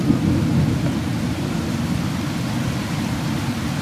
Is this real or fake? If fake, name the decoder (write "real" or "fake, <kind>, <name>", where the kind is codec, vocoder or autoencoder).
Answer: fake, vocoder, BigVGAN v2